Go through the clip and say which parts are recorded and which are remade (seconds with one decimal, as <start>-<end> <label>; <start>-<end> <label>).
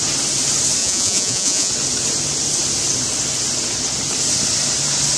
0.0-0.8 recorded; 0.8-1.7 remade; 1.7-5.2 recorded